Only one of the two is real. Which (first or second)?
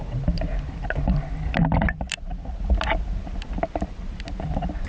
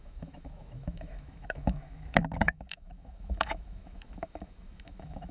first